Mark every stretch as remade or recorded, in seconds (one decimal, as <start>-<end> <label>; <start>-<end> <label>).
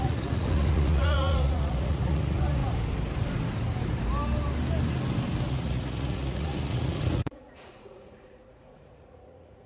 0.0-2.6 remade; 2.6-5.5 recorded; 5.5-9.7 remade